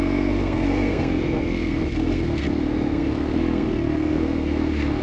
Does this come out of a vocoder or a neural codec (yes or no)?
yes